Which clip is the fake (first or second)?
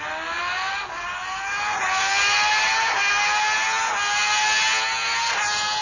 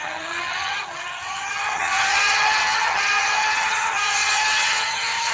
second